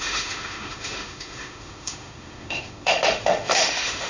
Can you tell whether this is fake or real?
fake